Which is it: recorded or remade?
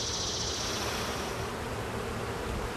recorded